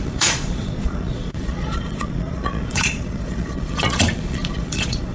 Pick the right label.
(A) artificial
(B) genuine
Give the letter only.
A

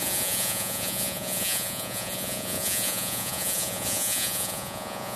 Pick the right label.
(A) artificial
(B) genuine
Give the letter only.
A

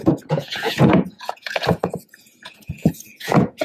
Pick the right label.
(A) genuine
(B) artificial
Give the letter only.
B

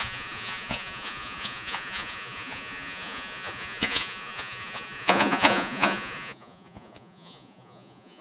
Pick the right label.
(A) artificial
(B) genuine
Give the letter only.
A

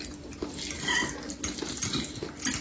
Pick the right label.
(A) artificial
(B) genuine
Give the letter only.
B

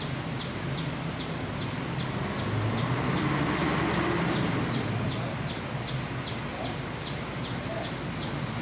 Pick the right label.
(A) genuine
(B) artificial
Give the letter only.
A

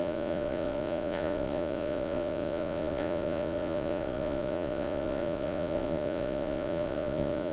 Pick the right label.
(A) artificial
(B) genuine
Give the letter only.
A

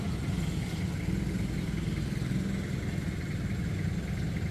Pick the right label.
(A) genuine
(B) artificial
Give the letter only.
A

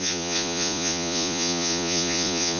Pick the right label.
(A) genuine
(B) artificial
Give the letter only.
B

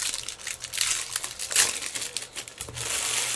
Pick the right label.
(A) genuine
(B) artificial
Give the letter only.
A